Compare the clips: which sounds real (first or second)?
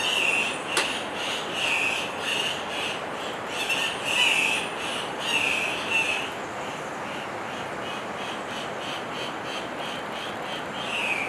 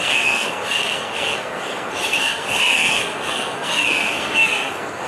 first